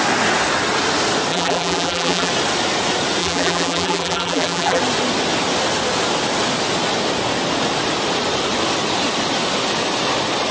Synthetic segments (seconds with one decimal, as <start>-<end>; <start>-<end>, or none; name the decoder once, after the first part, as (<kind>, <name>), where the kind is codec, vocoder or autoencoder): 1.3-2.3 (vocoder, BigVGAN v2); 3.2-4.8